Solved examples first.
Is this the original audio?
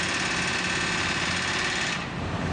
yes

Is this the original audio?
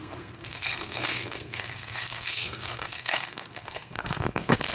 no